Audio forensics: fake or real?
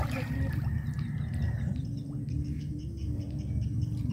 real